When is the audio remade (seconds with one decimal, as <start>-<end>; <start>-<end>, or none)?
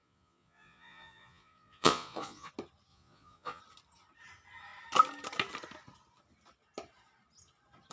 0.0-2.5; 2.9-3.6